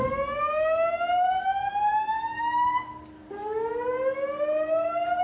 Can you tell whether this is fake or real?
real